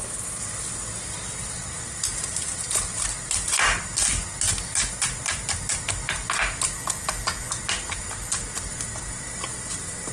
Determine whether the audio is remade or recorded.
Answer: recorded